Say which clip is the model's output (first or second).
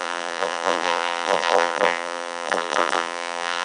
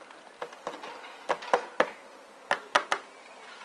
first